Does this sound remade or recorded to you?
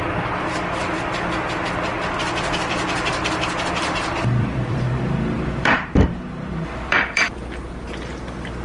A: remade